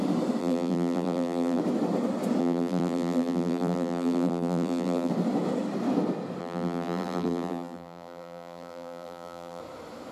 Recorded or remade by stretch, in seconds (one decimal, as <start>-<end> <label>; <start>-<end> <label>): 0.0-0.4 recorded; 0.4-1.6 remade; 1.6-2.4 recorded; 2.4-5.1 remade; 5.1-6.4 recorded; 6.4-9.6 remade; 9.6-10.1 recorded